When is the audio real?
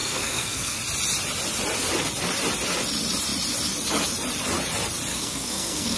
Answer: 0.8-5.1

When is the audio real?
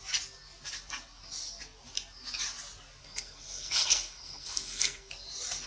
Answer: 0.0-3.0; 5.1-5.7